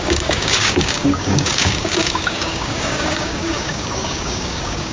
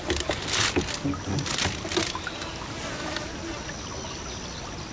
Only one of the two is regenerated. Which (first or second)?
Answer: first